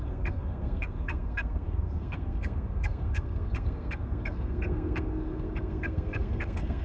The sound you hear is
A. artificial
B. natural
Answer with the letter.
A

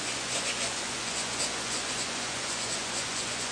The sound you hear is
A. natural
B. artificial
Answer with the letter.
B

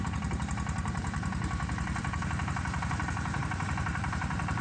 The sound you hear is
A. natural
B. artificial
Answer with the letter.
B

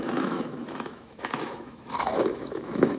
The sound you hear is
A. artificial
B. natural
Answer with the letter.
A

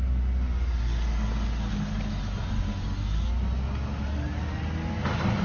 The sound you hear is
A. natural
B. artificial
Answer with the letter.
A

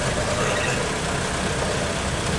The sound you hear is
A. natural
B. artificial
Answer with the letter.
A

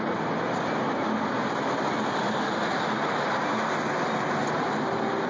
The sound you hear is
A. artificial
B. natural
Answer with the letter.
B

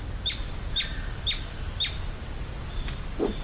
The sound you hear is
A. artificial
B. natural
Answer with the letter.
B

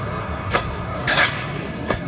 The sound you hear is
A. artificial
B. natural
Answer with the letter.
A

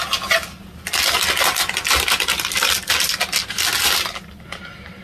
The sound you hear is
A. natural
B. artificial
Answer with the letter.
A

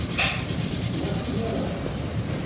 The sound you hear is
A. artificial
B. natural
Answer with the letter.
B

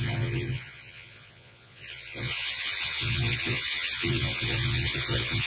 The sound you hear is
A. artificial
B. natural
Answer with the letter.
A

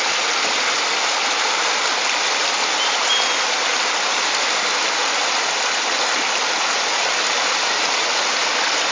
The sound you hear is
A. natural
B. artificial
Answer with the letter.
A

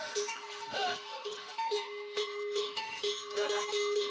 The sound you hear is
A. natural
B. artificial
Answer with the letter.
B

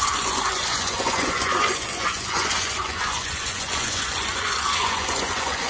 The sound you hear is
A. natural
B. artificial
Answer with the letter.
B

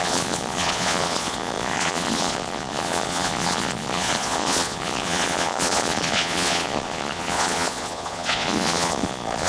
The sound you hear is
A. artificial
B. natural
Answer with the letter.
A